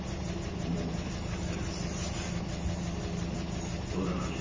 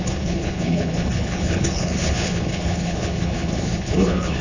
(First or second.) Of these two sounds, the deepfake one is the second